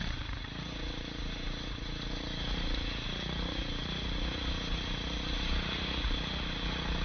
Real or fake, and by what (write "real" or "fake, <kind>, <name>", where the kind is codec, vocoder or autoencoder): fake, vocoder, Vocos